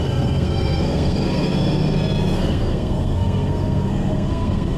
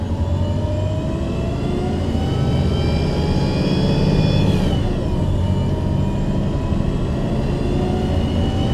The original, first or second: second